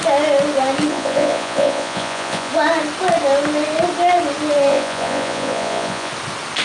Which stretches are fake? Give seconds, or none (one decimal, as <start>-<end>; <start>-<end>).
0.9-2.5; 4.7-6.1